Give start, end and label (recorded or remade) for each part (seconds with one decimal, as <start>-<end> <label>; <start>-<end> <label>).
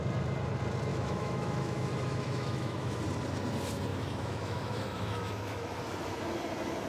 0.0-0.9 recorded; 0.9-3.0 remade; 3.0-3.9 recorded; 3.9-5.8 remade; 5.8-6.9 recorded